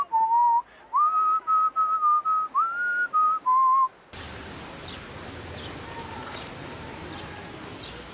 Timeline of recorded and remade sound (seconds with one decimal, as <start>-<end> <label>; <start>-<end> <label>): 0.0-8.1 recorded